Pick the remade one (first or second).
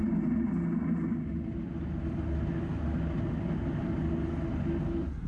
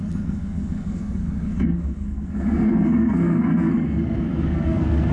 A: second